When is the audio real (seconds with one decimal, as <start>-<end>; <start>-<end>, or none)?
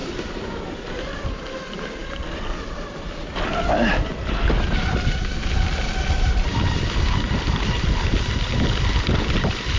none